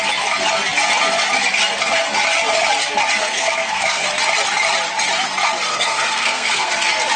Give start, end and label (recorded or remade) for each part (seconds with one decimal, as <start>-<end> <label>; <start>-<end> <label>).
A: 0.0-3.2 recorded; 3.2-4.1 remade; 4.1-5.7 recorded; 5.7-6.7 remade; 6.7-7.2 recorded